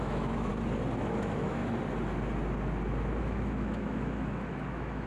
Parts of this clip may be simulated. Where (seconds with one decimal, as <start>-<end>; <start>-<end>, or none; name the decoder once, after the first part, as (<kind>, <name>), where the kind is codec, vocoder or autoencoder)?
0.0-0.5 (autoencoder, DAC-VAE); 1.1-1.6; 3.2-5.1